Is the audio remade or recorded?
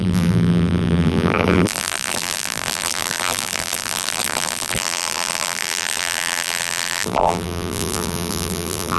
remade